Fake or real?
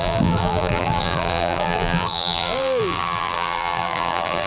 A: fake